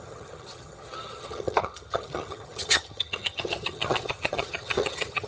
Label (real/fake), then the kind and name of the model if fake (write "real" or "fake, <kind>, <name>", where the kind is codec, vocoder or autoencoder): fake, vocoder, HiFi-GAN